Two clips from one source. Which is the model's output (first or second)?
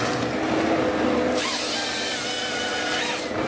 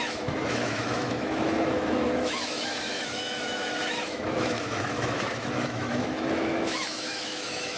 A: second